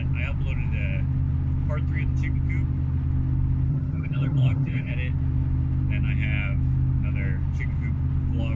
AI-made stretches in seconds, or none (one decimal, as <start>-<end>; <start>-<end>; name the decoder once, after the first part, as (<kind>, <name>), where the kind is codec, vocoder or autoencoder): 3.7-4.9 (vocoder, HiFi-GAN)